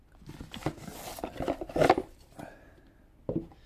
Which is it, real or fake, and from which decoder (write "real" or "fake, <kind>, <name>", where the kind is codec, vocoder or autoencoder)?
real